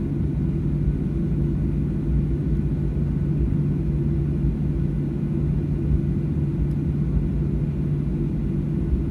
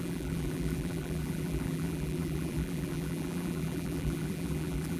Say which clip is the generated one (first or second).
second